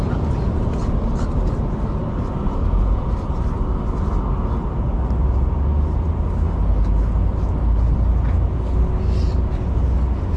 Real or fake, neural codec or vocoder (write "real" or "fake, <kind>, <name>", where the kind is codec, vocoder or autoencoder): real